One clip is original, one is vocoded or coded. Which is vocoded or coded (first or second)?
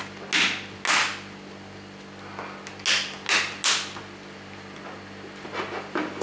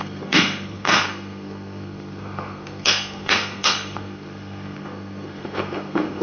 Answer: second